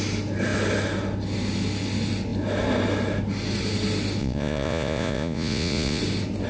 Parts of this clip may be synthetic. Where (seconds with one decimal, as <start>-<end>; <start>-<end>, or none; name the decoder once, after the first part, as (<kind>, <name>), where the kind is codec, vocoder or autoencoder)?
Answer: 4.2-6.0 (vocoder, Vocos)